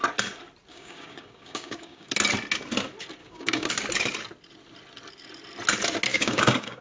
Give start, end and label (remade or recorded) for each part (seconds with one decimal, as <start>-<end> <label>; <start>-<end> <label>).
0.0-0.7 recorded; 0.7-2.1 remade; 2.1-3.2 recorded; 3.2-3.7 remade; 3.7-6.1 recorded; 6.1-6.8 remade